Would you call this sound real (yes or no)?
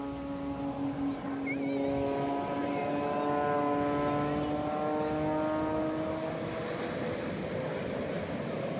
yes